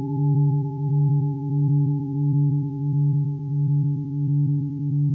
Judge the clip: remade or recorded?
remade